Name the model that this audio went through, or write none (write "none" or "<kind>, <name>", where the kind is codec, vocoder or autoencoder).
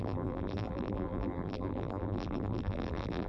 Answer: vocoder, BigVGAN v2